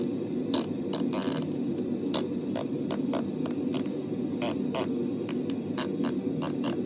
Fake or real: real